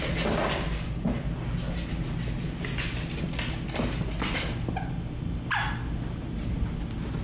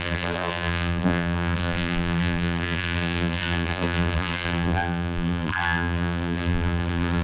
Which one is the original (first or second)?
first